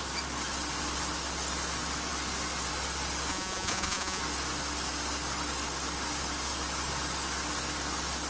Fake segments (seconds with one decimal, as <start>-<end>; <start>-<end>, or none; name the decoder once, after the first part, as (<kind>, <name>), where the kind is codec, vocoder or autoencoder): 3.3-4.2 (vocoder, Vocos)